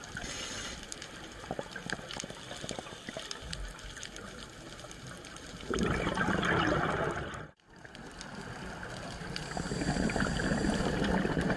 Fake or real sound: real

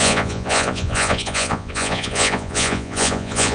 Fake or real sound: fake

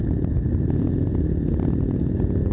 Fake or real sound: real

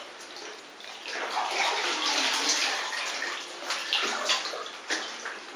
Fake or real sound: real